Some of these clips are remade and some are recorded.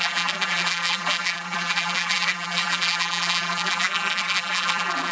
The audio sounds remade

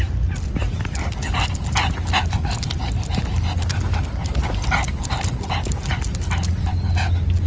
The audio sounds recorded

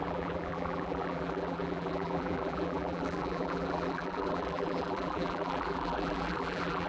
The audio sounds remade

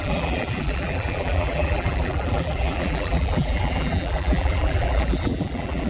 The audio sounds remade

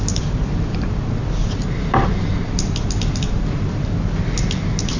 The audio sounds recorded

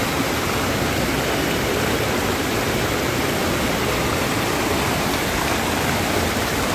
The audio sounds recorded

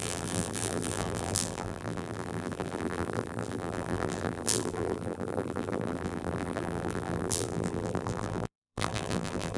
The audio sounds remade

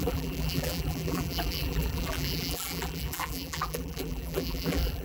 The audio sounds remade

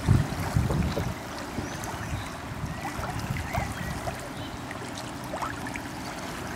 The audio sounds recorded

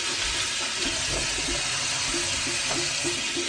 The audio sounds recorded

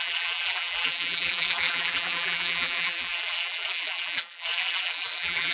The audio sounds remade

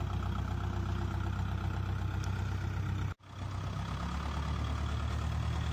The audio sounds recorded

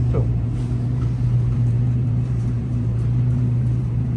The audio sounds remade